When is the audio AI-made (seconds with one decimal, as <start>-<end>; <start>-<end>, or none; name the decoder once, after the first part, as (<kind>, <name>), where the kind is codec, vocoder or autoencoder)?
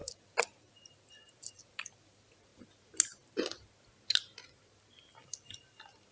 0.0-2.5 (vocoder, BigVGAN v2); 5.0-6.1